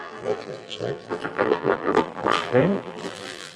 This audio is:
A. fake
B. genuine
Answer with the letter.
A